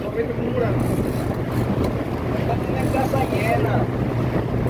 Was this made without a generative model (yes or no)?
yes